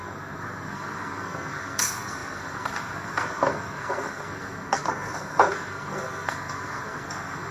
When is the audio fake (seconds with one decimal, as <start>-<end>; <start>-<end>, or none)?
0.0-7.5